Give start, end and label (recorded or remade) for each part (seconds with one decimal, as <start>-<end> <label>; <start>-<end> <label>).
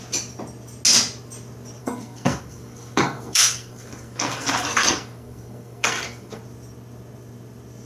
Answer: 0.0-1.8 recorded; 1.8-6.4 remade; 6.4-7.9 recorded